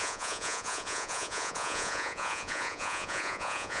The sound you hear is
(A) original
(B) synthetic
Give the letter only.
B